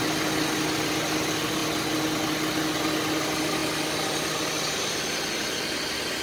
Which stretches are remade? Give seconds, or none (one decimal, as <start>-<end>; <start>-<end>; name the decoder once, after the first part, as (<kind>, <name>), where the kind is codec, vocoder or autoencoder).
none